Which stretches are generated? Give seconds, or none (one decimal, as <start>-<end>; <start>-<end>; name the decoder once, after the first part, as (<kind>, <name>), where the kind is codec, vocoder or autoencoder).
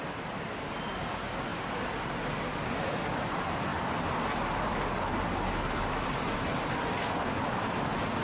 none